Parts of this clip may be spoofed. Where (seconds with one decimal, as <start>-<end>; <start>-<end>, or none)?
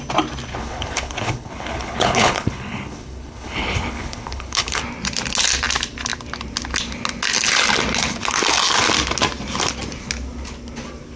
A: 0.5-4.8